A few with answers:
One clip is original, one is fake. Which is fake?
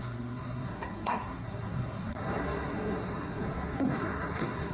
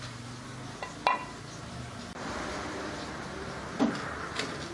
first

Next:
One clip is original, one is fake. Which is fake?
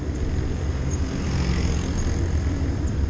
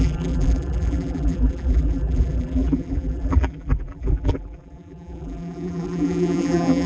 second